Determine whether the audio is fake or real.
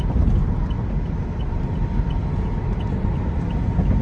real